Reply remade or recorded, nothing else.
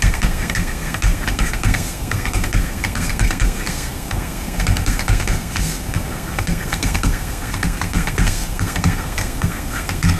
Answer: remade